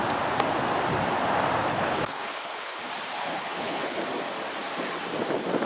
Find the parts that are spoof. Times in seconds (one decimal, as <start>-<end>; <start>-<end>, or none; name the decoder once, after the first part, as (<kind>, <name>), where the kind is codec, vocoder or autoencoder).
1.7-2.9 (codec, HILCodec); 3.3-4.0